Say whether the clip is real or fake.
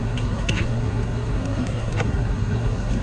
fake